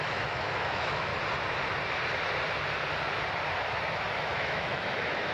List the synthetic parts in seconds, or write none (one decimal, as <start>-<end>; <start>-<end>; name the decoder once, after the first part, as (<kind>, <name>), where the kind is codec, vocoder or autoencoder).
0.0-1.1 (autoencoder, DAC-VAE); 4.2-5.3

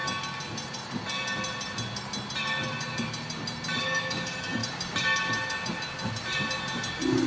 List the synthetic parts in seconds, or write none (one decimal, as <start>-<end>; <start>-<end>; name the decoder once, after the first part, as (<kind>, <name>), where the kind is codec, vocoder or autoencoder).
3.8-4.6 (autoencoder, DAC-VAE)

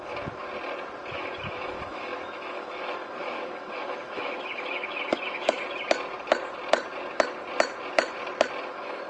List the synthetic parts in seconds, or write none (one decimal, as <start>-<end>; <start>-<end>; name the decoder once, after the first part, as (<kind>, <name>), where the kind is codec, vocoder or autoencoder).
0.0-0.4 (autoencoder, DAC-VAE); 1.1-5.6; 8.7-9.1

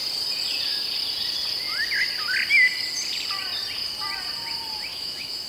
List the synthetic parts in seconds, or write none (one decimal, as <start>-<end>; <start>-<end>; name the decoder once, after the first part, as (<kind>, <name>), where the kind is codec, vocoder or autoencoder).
4.9-5.5 (autoencoder, DAC-VAE)

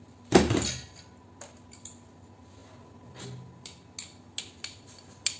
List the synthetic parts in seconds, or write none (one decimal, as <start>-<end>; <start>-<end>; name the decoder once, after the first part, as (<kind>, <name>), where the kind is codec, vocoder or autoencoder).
none

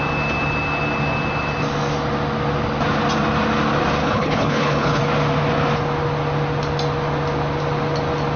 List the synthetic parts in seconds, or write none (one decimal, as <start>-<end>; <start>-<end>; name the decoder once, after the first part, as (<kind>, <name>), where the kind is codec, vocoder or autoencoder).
4.0-5.0 (codec, HILCodec)

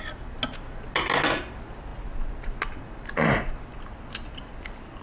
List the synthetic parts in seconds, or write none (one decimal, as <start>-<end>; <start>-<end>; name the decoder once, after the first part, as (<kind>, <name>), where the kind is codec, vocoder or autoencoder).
none